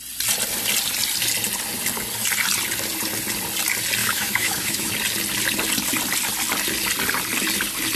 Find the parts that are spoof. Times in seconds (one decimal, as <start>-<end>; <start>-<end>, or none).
4.0-4.9